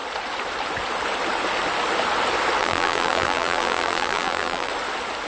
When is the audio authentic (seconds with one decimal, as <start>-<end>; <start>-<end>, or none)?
0.0-2.6; 4.7-5.3